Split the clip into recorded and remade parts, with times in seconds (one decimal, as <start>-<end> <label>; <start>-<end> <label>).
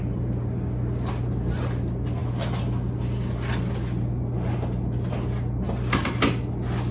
0.0-6.9 recorded